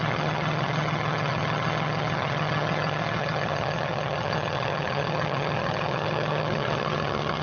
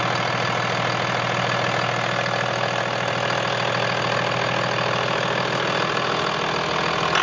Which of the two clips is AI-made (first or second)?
first